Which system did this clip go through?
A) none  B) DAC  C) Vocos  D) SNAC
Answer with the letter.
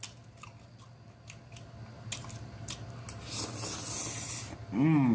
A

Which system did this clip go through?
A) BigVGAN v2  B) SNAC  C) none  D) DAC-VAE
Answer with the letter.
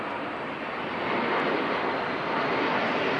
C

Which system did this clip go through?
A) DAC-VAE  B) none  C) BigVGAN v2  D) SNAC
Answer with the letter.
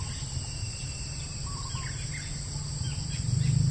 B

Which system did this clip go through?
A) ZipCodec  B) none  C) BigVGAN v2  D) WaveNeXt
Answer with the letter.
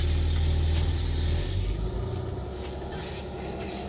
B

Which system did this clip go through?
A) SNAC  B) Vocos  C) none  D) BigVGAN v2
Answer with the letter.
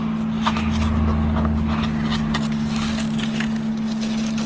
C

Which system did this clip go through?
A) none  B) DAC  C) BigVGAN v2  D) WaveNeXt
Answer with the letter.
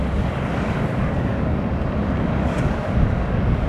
B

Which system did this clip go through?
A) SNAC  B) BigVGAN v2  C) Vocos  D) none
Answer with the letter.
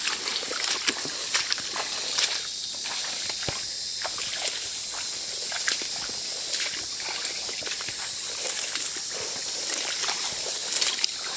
D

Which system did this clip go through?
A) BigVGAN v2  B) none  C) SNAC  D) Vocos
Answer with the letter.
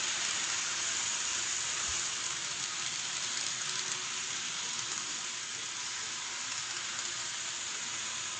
B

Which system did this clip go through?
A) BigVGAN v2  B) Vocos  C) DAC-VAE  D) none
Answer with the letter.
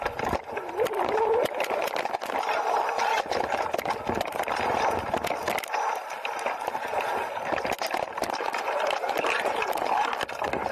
D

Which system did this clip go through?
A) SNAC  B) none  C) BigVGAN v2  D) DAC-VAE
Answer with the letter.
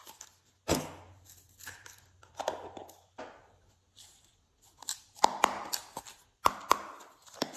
B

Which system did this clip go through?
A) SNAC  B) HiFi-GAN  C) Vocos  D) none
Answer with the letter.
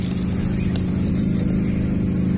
D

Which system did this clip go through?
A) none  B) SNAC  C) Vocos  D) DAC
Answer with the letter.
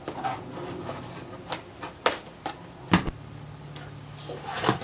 A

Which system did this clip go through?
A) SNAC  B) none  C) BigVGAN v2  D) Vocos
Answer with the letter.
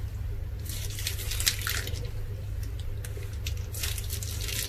B